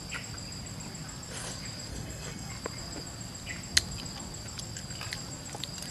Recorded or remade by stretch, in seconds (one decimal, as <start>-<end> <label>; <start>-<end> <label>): 0.0-1.9 recorded; 1.9-2.5 remade; 2.5-5.9 recorded